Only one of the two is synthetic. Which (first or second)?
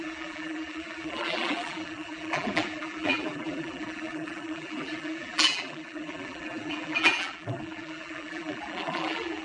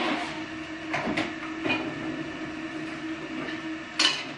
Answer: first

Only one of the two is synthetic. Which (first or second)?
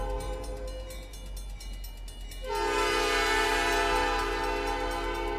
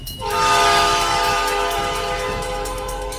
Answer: second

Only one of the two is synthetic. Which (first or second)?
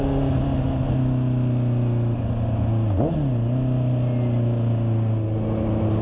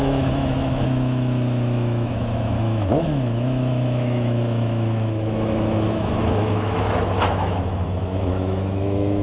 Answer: second